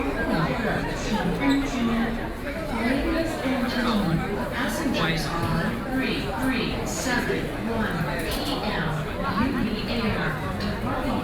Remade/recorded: recorded